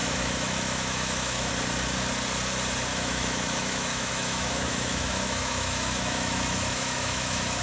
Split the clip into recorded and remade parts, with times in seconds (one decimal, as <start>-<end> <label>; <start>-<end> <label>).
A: 0.0-1.5 remade; 1.5-2.9 recorded; 2.9-7.6 remade